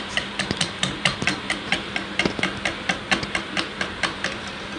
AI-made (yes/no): no